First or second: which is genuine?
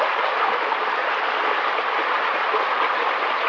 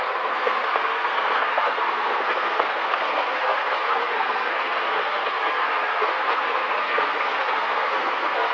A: first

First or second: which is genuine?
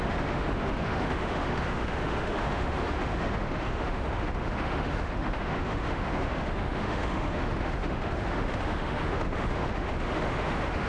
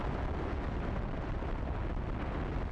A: second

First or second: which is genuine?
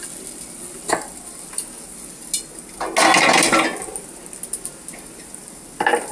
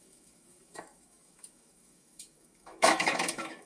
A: first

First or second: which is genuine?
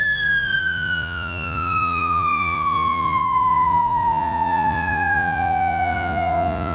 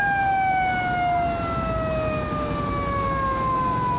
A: second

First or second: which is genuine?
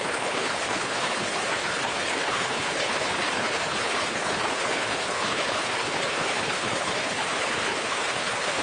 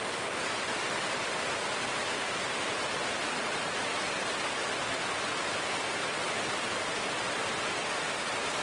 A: second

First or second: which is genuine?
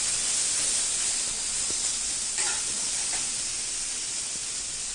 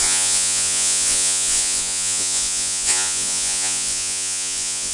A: first